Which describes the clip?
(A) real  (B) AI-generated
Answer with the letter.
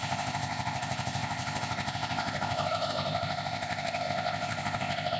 B